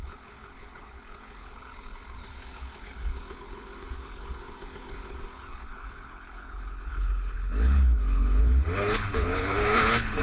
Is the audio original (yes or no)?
no